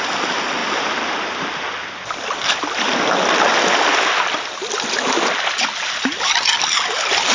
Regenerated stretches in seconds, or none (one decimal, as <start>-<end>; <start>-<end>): none